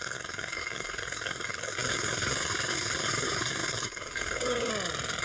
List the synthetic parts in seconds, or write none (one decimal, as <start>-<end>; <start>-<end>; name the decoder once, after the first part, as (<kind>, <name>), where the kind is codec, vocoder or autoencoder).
0.0-4.7 (codec, SNAC)